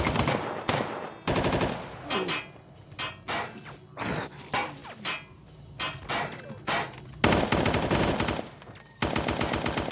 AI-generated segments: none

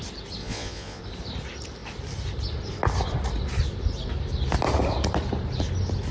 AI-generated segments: 0.4-1.0 (vocoder, Vocos)

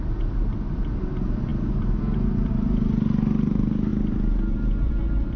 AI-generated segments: none

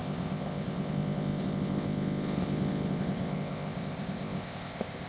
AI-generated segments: 0.0-5.1 (codec, ZipCodec)

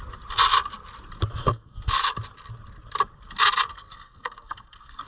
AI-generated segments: 1.4-2.0 (codec, SNAC); 3.7-5.1

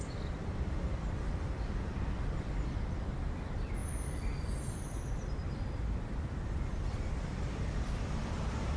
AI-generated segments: 0.0-8.8 (vocoder, BigVGAN v2)

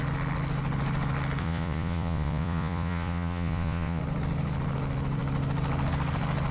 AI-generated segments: 1.4-4.0 (vocoder, Vocos)